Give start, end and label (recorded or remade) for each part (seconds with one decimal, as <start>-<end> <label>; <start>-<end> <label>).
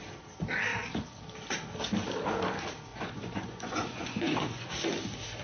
0.0-2.9 recorded; 2.9-4.7 remade; 4.7-5.4 recorded